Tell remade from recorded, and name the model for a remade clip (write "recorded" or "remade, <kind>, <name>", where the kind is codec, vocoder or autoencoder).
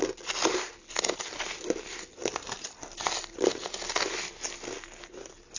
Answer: recorded